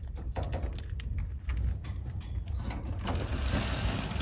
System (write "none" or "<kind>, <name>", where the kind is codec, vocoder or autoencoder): none